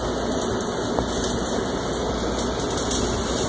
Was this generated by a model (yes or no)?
no